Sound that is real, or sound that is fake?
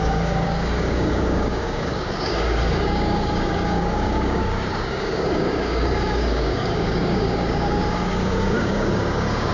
fake